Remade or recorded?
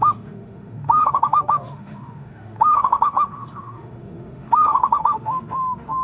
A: remade